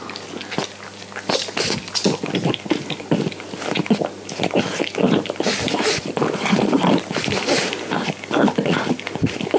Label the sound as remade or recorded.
recorded